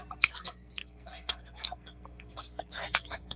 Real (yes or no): no